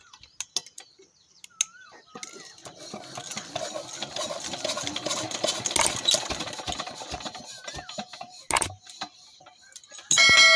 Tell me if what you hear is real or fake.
real